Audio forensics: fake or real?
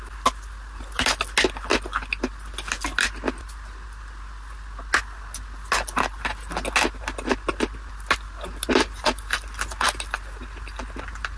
real